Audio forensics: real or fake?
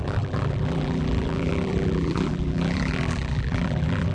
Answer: fake